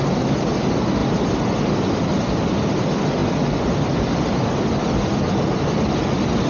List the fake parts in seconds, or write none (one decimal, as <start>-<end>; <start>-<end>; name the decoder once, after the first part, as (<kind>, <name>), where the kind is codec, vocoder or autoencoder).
none